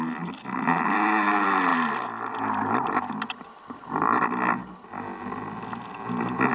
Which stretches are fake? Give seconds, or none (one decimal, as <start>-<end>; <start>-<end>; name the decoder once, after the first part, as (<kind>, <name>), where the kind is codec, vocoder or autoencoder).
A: none